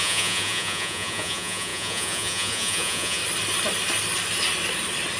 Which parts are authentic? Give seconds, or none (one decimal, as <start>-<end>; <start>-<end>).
3.2-5.2